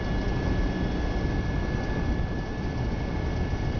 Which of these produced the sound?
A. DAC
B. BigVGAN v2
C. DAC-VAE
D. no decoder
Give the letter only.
D